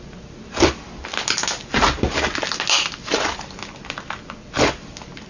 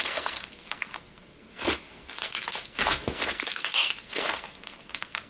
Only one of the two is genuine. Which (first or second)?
first